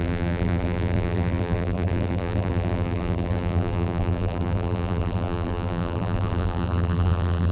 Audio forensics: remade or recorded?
remade